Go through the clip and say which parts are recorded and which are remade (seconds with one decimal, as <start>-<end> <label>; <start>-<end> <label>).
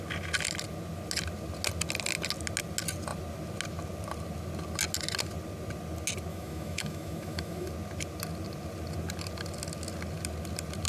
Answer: 0.0-6.3 recorded; 6.3-7.7 remade; 7.7-10.9 recorded